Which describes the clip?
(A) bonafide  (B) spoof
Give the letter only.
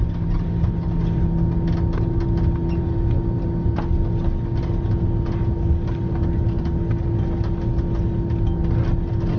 A